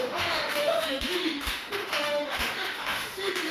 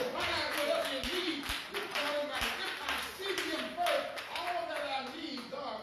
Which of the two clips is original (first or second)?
second